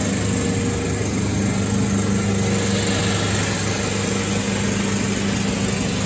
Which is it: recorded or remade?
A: recorded